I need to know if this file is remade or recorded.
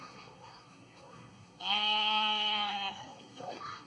remade